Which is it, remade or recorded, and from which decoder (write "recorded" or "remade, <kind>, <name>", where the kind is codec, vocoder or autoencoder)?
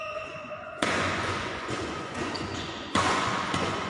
remade, vocoder, Vocos